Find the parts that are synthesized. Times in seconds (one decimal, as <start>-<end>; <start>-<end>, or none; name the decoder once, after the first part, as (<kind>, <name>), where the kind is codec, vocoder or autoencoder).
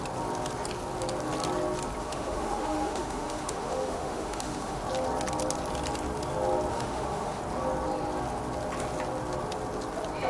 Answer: 2.0-4.8 (autoencoder, DAC-VAE); 6.7-7.4